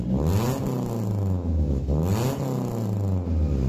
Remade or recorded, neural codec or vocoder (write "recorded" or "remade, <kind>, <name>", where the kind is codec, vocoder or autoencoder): recorded